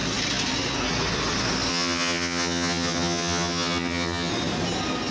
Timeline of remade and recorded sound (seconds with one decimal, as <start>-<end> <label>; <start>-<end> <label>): 0.0-1.7 recorded; 1.7-4.3 remade; 4.3-5.1 recorded